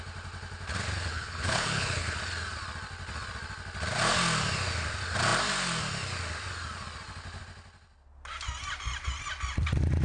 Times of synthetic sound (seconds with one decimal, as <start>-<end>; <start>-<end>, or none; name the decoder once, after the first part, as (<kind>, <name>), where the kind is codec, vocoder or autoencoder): 1.1-2.2 (codec, HILCodec)